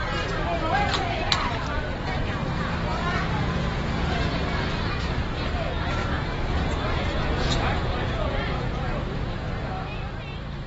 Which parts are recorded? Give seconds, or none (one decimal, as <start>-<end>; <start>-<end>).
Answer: 0.0-2.9; 4.9-6.0; 9.3-10.7